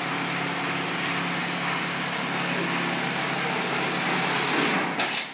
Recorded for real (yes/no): yes